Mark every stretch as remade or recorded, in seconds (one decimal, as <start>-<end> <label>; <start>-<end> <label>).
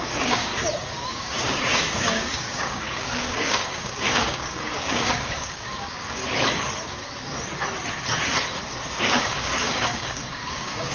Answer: 0.0-0.5 remade; 0.5-1.1 recorded; 1.1-6.2 remade; 6.2-8.9 recorded; 8.9-10.9 remade